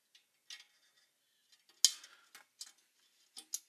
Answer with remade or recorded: recorded